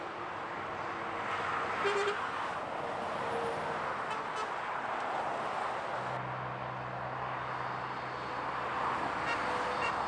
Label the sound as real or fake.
real